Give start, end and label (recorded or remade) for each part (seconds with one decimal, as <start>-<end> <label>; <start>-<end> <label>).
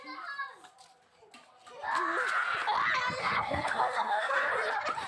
0.0-3.2 recorded; 3.2-4.5 remade; 4.5-5.1 recorded